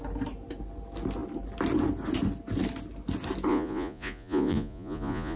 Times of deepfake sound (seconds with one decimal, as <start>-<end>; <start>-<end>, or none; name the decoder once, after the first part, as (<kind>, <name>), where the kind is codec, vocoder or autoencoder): 3.5-5.4 (vocoder, Vocos)